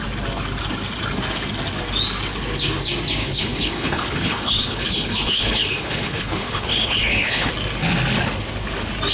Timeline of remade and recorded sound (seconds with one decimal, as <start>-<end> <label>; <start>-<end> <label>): 0.0-3.2 recorded; 3.2-7.5 remade; 7.5-9.1 recorded